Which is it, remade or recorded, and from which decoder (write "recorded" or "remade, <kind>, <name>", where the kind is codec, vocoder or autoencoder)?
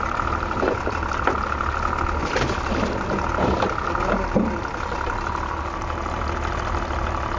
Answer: recorded